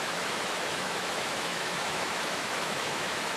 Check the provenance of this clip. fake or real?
fake